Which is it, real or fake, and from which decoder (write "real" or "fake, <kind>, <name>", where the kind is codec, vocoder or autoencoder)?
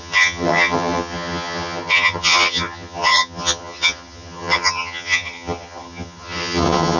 fake, vocoder, HiFi-GAN